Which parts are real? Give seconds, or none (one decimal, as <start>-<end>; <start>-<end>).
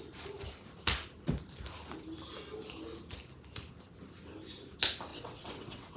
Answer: 0.0-5.1